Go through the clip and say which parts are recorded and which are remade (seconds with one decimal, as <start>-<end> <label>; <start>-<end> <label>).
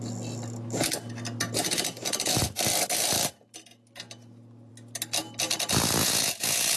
0.0-6.0 recorded; 6.0-6.8 remade